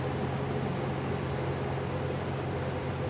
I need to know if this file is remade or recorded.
recorded